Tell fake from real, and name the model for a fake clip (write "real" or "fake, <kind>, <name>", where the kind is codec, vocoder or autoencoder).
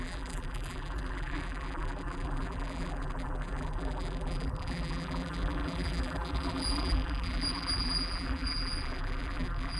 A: fake, vocoder, BigVGAN v2